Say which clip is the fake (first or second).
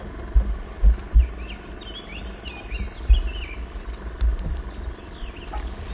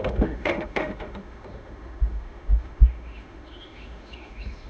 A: second